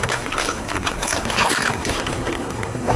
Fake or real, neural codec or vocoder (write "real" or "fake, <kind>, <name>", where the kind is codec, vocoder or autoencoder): fake, codec, SNAC